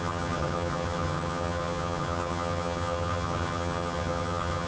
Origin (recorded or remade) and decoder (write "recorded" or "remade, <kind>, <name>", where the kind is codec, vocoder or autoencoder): remade, vocoder, HiFi-GAN